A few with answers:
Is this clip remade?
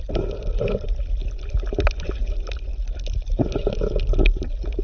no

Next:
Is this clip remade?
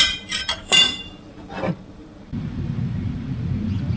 yes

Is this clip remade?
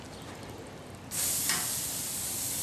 no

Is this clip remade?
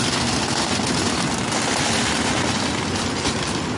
no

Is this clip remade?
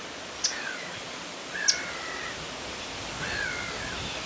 no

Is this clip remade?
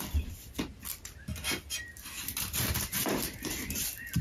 yes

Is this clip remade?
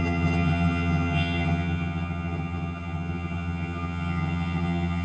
yes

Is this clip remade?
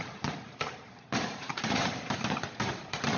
yes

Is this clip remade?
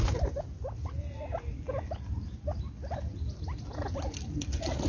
no